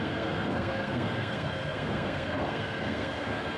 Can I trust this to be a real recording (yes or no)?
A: no